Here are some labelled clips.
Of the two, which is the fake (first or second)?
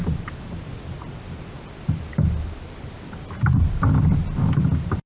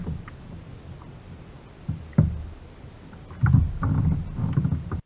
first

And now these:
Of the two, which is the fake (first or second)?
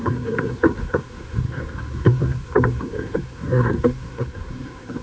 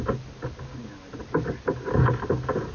first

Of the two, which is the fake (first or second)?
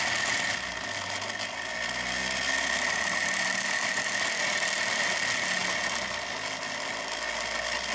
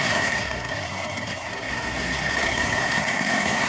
second